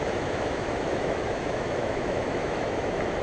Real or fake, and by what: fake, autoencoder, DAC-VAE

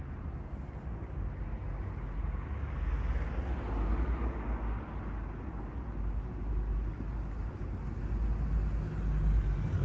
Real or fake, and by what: real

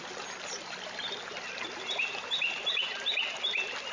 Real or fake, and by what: real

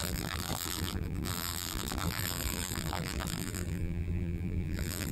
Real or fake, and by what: fake, vocoder, BigVGAN v2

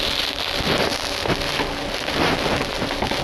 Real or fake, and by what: real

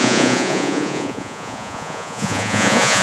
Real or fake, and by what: fake, vocoder, Vocos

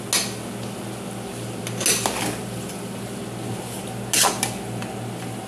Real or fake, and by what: real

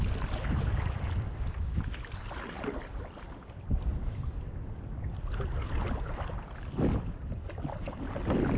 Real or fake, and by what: real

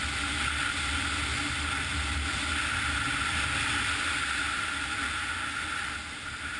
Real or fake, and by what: real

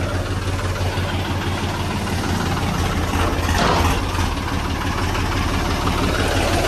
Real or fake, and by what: real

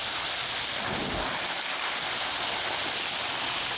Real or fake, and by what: real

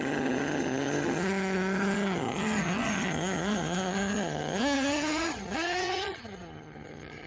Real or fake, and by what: fake, vocoder, HiFi-GAN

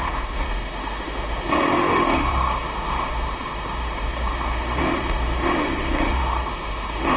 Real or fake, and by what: fake, autoencoder, DAC-VAE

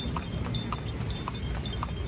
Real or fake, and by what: real